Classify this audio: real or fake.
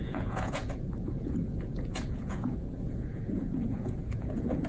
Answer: fake